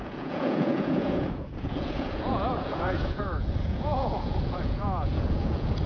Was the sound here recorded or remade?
remade